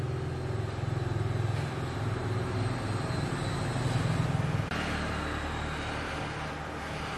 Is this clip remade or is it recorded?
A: recorded